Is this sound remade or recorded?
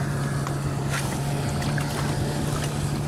recorded